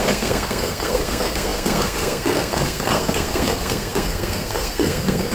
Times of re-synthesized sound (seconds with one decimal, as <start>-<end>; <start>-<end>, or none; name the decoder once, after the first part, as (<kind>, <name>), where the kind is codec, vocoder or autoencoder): 0.0-5.3 (codec, SNAC)

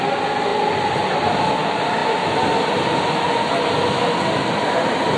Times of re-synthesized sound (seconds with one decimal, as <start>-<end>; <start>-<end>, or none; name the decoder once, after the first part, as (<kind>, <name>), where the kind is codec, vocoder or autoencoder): none

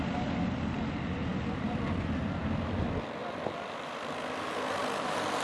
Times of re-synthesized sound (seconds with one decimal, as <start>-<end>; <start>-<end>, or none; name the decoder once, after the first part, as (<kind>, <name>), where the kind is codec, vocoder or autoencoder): 1.3-2.4 (vocoder, BigVGAN v2)

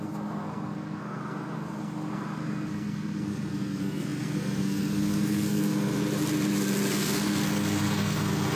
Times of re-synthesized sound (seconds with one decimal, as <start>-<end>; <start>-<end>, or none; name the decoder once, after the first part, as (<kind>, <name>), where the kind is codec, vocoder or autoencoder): 0.0-6.0 (codec, SNAC); 6.9-8.6

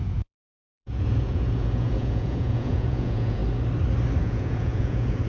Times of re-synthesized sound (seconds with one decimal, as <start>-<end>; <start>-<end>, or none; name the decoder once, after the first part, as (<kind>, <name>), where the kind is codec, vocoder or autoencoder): 0.0-3.4 (vocoder, Vocos); 4.2-5.3

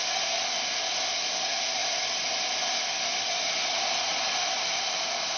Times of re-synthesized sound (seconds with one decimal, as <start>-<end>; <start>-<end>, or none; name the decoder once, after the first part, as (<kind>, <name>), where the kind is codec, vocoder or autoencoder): 1.8-4.7 (vocoder, BigVGAN v2)